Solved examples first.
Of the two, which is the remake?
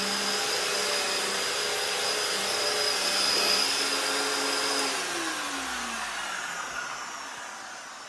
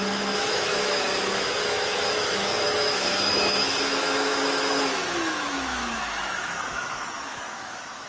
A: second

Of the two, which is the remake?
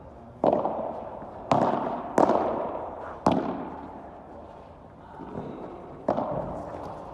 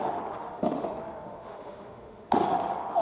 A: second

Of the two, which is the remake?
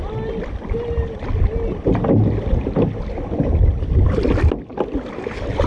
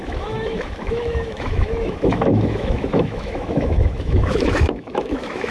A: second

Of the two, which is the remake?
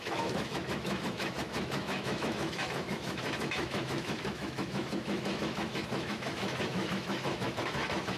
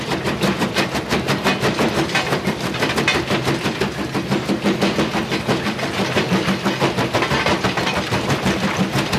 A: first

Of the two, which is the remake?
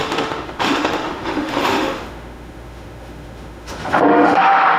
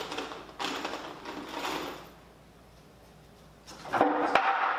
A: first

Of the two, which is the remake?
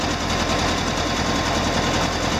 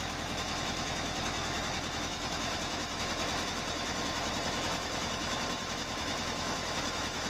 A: second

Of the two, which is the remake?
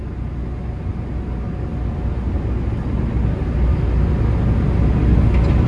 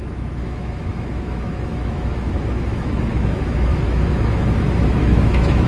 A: second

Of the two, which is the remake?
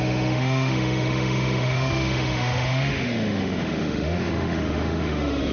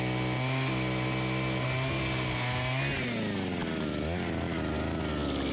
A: first